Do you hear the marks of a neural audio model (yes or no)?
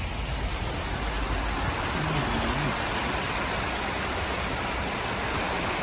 no